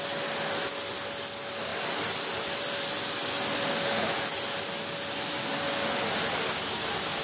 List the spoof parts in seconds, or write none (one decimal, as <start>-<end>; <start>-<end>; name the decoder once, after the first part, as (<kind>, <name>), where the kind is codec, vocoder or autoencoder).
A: 1.7-3.0 (vocoder, BigVGAN v2)